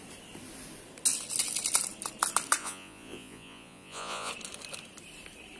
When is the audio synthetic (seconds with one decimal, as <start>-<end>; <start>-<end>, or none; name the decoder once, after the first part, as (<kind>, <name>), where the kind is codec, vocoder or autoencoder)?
2.6-4.3 (vocoder, Vocos)